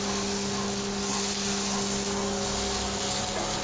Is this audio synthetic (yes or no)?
no